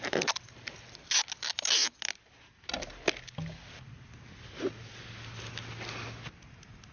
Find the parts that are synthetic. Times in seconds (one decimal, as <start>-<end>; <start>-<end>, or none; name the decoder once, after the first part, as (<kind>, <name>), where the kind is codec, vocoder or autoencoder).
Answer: none